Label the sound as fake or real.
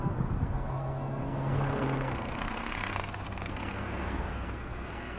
fake